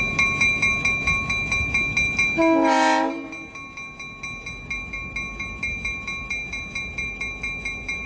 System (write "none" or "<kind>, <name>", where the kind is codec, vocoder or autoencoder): none